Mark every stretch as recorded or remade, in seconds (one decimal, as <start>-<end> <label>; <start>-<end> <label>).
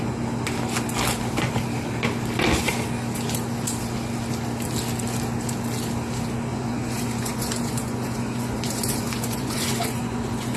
0.0-6.5 recorded; 6.5-10.6 remade